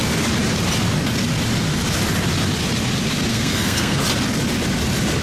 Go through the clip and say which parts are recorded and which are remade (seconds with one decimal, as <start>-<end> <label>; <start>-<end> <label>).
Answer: 0.0-3.3 recorded; 3.3-4.0 remade; 4.0-5.2 recorded